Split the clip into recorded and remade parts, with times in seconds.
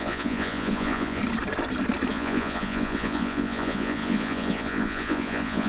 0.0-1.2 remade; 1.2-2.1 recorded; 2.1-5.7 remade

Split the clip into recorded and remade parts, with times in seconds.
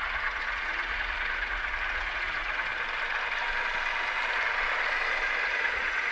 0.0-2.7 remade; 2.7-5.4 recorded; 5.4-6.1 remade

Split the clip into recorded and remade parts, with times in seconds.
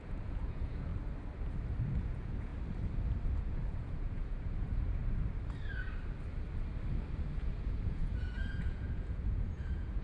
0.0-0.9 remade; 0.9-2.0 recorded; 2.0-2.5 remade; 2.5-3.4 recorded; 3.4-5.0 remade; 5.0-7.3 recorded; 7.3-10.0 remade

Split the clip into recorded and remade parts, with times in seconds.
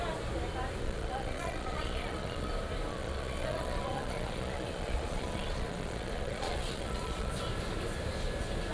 0.0-0.8 recorded; 0.8-2.5 remade; 2.5-2.9 recorded; 2.9-7.3 remade; 7.3-8.7 recorded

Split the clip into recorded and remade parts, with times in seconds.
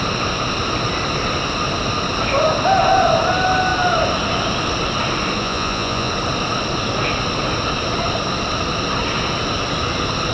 0.0-5.4 recorded; 5.4-6.1 remade; 6.1-10.3 recorded